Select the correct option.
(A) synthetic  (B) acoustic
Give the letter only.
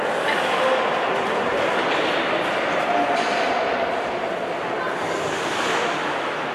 B